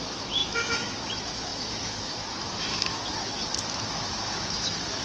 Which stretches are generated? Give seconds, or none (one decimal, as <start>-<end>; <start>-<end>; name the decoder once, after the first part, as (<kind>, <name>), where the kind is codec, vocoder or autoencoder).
0.0-5.0 (autoencoder, DAC-VAE)